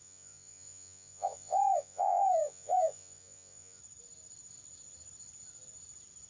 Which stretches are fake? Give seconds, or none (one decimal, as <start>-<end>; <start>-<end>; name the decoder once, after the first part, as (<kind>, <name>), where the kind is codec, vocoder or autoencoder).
0.0-3.8 (vocoder, Vocos)